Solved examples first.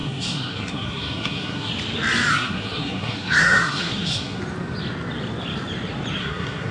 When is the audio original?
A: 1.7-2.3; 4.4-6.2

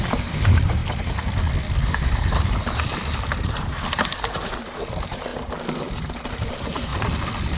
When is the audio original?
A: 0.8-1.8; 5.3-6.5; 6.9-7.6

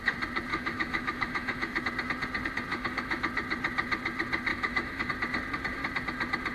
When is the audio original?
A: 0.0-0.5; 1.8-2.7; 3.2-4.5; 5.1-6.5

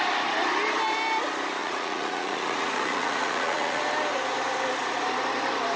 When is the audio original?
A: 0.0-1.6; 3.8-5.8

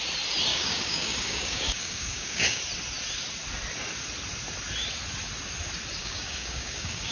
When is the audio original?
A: 0.0-0.5; 2.6-6.0